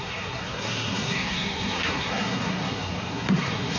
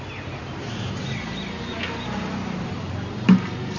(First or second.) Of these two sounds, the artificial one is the first